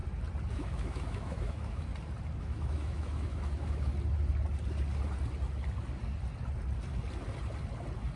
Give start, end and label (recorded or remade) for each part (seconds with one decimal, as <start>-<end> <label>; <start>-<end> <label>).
0.0-0.5 recorded; 0.5-1.9 remade; 1.9-2.4 recorded; 2.4-3.9 remade; 3.9-8.2 recorded